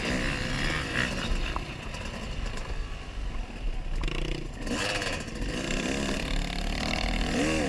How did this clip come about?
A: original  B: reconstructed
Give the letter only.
A